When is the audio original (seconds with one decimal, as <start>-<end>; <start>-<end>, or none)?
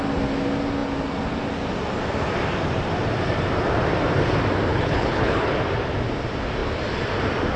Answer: 0.0-4.7; 5.5-7.6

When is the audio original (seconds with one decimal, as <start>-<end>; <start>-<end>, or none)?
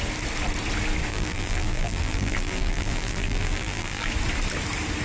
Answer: 0.0-1.1; 4.1-5.0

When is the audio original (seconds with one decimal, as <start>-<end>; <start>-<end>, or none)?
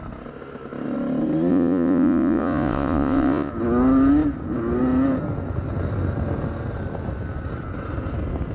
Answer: 0.0-1.5; 3.5-8.5